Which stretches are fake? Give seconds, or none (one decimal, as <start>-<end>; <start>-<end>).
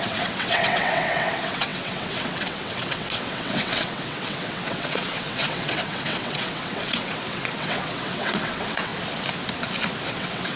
0.0-8.9; 10.1-10.6